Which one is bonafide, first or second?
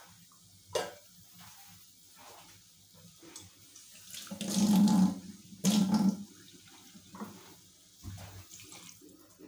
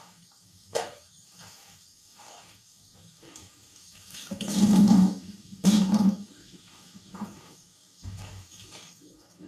first